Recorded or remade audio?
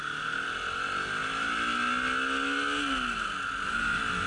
recorded